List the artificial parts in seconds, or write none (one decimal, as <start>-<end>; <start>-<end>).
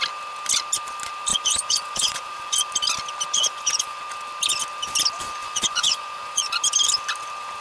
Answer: 1.3-2.5; 3.4-4.0; 5.4-6.4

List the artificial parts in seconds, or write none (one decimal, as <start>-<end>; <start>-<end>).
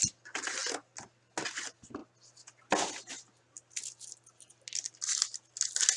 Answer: none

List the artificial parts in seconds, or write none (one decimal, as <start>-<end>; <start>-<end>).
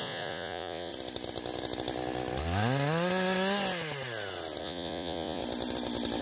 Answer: 0.0-0.9; 4.6-5.4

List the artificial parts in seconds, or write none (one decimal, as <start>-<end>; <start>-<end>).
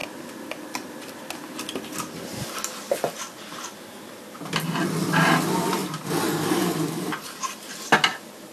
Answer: none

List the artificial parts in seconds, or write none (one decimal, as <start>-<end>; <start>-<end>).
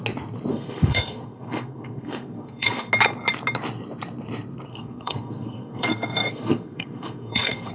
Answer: 0.5-2.9; 4.7-7.7